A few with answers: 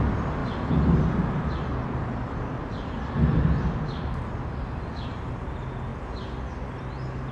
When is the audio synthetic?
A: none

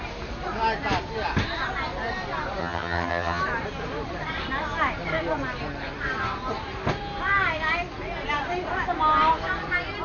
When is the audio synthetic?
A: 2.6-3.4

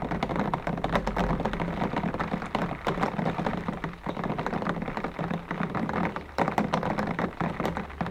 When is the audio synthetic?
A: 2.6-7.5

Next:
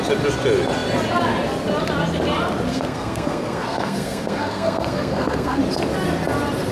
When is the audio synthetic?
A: 2.7-5.6

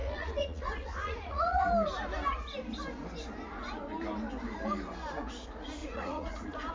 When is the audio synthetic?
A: 0.0-1.7; 5.8-6.7

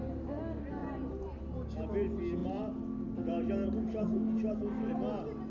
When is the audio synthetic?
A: 0.8-1.4; 2.4-4.9

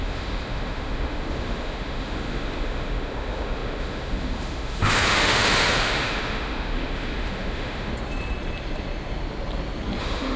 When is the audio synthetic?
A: 0.0-7.9; 10.0-10.4